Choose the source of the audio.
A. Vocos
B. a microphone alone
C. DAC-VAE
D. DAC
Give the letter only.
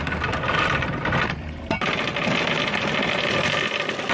B